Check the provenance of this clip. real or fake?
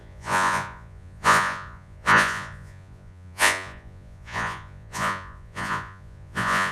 fake